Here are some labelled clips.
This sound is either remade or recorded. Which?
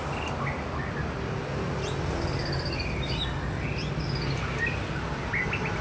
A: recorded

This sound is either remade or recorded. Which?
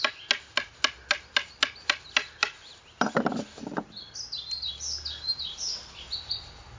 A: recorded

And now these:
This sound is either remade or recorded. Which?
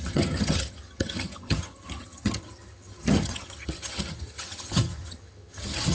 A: remade